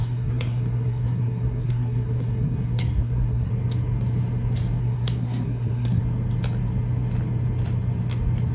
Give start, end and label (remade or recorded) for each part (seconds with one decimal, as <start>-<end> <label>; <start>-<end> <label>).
0.0-3.5 remade; 3.5-4.8 recorded; 4.8-6.0 remade; 6.0-8.5 recorded